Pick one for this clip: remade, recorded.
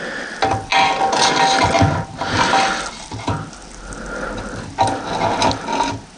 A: recorded